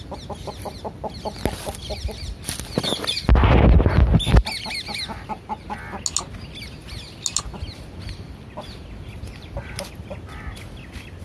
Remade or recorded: recorded